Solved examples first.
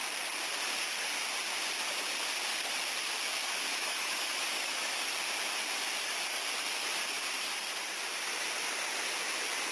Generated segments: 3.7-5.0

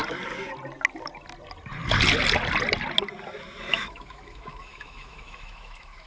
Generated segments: 3.7-6.1

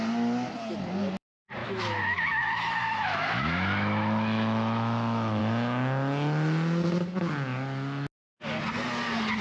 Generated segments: 1.6-5.4